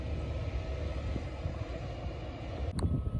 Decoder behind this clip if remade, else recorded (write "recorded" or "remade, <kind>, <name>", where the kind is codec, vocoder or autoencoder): recorded